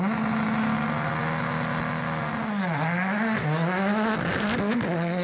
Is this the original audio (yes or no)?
yes